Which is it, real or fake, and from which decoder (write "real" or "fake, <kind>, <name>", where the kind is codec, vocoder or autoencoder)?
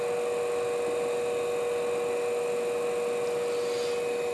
real